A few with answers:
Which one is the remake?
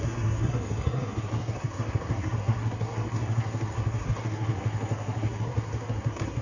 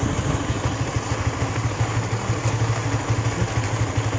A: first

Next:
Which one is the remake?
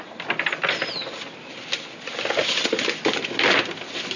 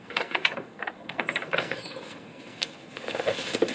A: second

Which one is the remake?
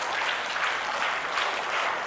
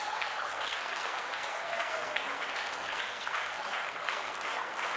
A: second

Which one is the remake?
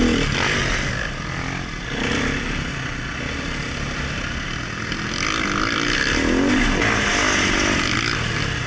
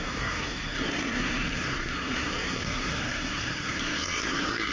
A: second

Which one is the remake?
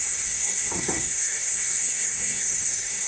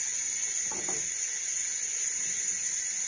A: first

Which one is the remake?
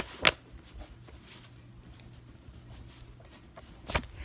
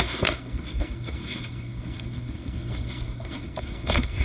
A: second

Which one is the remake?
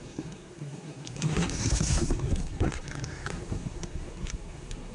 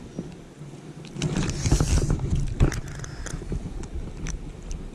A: first